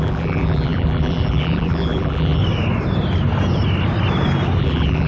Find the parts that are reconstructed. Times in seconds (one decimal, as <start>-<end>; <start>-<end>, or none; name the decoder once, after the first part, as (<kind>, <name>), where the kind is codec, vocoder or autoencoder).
0.0-2.4 (vocoder, BigVGAN v2); 4.6-5.1